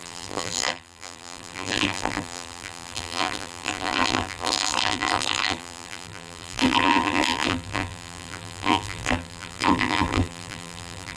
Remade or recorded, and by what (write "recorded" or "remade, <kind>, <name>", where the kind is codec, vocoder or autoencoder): remade, vocoder, BigVGAN v2